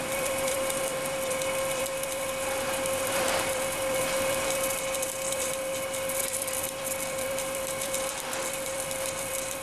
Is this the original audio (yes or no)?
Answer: no